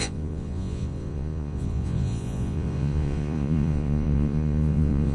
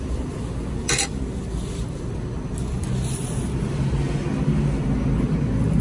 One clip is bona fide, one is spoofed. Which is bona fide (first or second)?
second